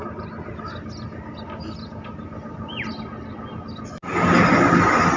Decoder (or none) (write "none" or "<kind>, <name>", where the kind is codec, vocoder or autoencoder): none